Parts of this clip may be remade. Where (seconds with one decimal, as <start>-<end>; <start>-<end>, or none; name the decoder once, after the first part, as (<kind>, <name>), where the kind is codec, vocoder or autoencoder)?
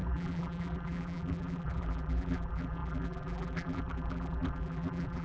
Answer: 0.0-5.2 (vocoder, BigVGAN v2)